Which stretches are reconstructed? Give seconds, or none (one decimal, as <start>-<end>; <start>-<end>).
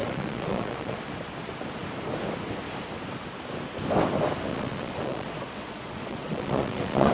0.0-1.0; 4.5-7.1